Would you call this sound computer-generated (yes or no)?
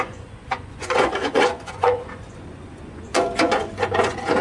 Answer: yes